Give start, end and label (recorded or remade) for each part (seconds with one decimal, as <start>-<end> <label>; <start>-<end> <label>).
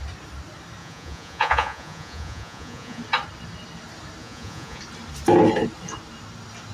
0.0-0.8 recorded; 0.8-3.0 remade; 3.0-4.2 recorded; 4.2-4.8 remade; 4.8-6.7 recorded